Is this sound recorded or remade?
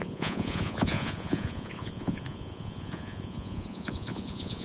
remade